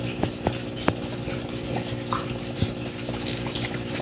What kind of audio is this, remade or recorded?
recorded